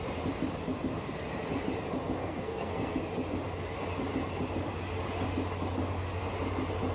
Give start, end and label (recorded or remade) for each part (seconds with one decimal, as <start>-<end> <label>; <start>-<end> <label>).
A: 0.0-2.2 recorded; 2.2-3.0 remade; 3.0-6.9 recorded